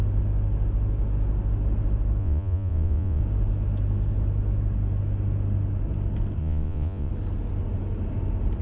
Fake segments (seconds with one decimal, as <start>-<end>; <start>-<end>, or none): 2.2-3.2; 6.4-7.1